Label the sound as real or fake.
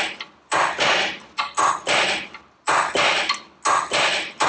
real